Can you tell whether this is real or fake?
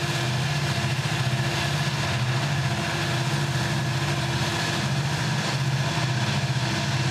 real